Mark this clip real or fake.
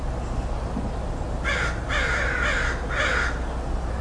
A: real